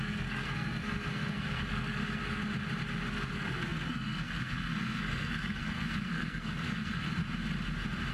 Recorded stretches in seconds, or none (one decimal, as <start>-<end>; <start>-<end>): 2.4-3.1; 7.2-8.1